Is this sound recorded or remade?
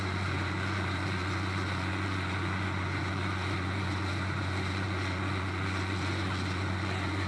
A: remade